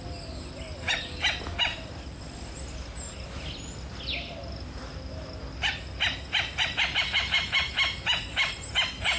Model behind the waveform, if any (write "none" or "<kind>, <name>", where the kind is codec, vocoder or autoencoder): none